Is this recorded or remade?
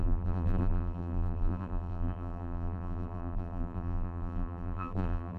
remade